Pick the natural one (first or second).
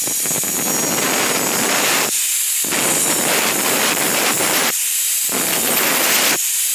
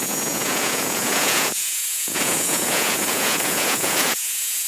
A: first